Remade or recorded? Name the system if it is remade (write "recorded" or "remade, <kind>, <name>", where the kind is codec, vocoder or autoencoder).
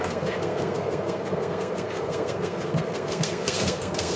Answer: remade, codec, SNAC